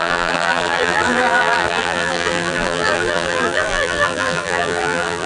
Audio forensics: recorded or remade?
remade